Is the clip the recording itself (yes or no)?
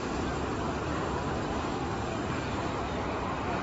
yes